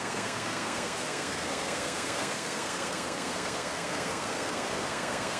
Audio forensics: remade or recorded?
remade